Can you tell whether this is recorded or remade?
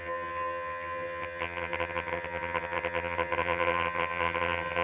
remade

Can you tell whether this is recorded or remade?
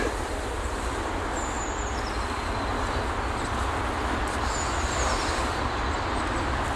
recorded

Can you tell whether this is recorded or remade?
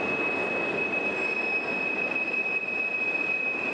recorded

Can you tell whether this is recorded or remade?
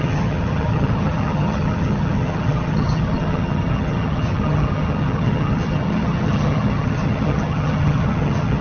remade